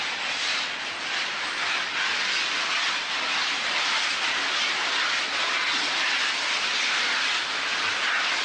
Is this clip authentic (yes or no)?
yes